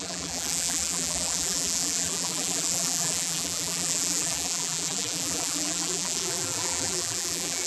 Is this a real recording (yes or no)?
no